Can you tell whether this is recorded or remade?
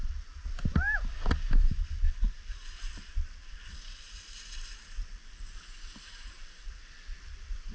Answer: recorded